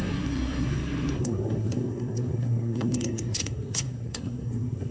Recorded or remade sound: remade